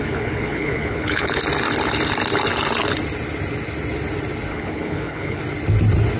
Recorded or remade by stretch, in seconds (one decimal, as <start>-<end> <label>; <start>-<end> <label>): 0.0-1.4 remade; 1.4-4.5 recorded; 4.5-5.4 remade; 5.4-6.2 recorded